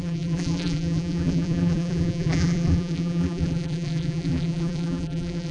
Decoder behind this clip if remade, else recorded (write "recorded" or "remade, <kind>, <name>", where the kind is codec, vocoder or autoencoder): remade, vocoder, BigVGAN v2